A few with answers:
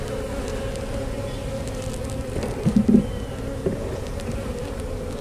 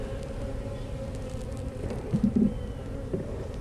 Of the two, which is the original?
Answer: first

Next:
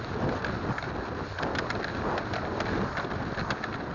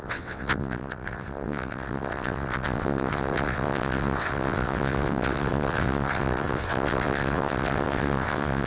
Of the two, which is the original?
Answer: first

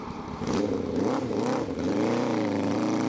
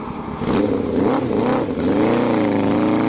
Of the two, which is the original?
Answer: second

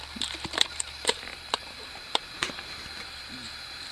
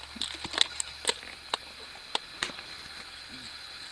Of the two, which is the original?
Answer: second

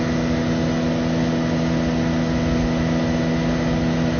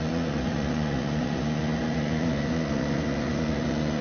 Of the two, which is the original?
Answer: first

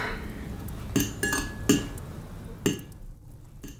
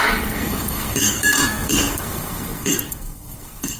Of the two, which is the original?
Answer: first